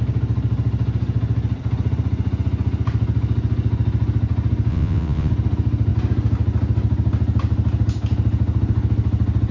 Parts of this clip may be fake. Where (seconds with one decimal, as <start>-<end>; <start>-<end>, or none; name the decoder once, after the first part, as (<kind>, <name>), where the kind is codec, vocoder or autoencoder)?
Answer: 4.7-5.3 (vocoder, WaveNeXt)